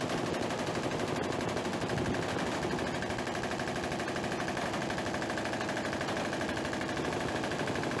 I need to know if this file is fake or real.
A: real